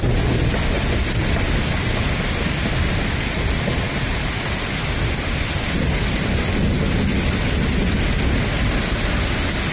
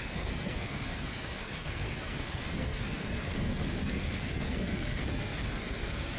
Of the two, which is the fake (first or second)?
second